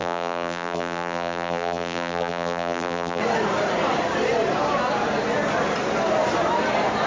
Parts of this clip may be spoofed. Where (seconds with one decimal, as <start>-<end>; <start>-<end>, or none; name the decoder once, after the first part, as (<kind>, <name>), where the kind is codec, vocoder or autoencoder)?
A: 0.0-3.2 (vocoder, BigVGAN v2)